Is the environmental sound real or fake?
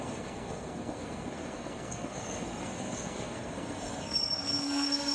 fake